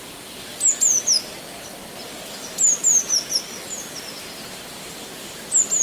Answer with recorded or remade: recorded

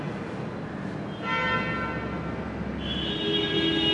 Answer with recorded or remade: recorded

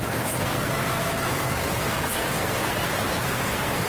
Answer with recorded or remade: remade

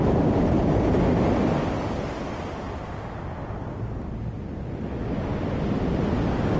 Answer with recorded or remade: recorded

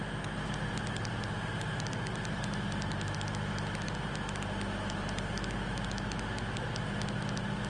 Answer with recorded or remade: recorded